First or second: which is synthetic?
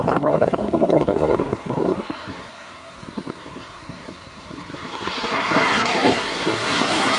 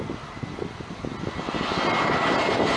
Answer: first